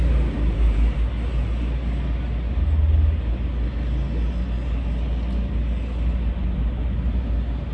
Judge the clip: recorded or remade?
recorded